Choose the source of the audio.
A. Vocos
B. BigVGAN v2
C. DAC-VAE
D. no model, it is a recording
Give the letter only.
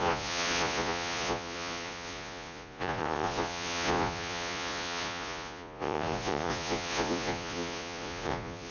A